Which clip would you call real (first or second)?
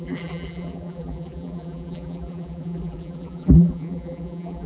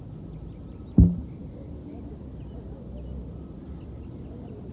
second